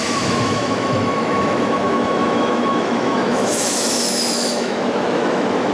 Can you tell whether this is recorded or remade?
remade